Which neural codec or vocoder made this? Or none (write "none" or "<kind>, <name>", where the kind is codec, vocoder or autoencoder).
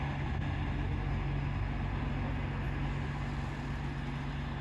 none